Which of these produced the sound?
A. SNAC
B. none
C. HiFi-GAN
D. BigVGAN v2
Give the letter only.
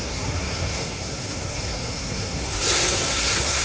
A